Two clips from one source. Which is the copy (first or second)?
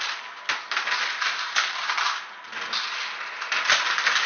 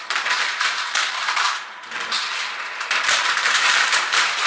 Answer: second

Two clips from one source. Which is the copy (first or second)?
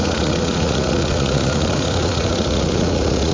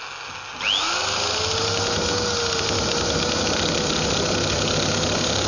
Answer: first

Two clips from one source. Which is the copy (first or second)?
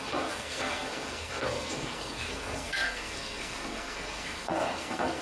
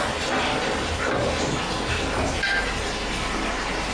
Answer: first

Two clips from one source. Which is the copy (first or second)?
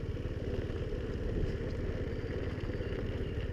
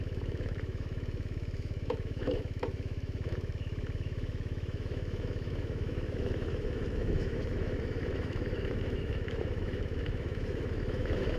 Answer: second